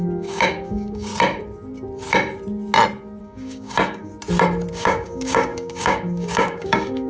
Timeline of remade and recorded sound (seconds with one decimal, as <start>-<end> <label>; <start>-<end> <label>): 0.0-1.1 remade; 1.1-3.2 recorded; 3.2-4.1 remade; 4.1-4.7 recorded; 4.7-7.1 remade